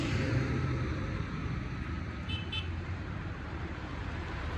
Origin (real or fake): fake